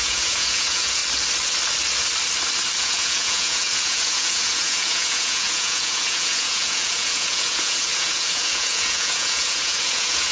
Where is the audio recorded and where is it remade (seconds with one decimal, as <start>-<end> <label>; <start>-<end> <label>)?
0.0-1.0 remade; 1.0-2.8 recorded; 2.8-10.3 remade